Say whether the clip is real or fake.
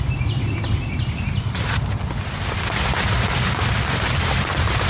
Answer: real